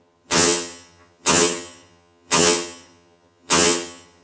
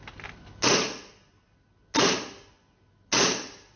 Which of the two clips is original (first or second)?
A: second